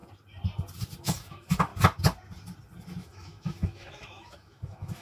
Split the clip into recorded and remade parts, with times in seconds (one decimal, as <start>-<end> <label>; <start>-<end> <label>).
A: 0.0-1.0 recorded; 1.0-1.7 remade; 1.7-3.0 recorded; 3.0-5.0 remade